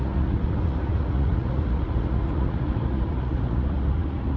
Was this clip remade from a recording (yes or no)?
yes